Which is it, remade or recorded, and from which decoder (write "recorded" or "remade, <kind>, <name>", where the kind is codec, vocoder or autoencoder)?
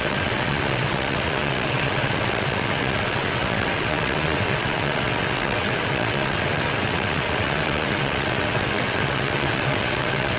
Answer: remade, vocoder, WaveNeXt